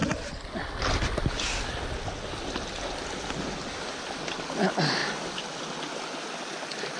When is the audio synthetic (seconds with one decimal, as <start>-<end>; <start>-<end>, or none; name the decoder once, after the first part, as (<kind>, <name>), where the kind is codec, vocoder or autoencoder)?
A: none